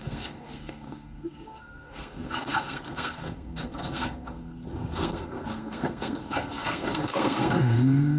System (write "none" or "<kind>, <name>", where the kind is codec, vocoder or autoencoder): codec, SNAC